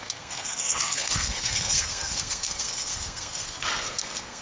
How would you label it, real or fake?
fake